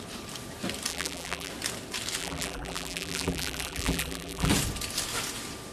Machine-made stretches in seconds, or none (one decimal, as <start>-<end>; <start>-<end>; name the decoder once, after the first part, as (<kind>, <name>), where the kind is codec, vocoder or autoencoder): 0.9-1.5 (vocoder, BigVGAN v2); 2.2-4.5